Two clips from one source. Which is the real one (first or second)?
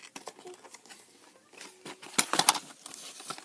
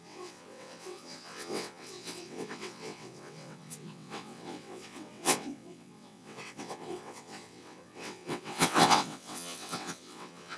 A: first